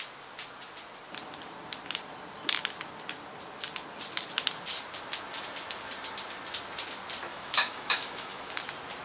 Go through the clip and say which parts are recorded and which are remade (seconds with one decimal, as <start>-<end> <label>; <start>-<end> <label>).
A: 0.0-7.3 recorded; 7.3-8.5 remade; 8.5-9.0 recorded